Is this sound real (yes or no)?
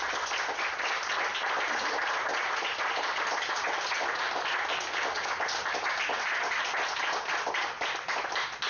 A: yes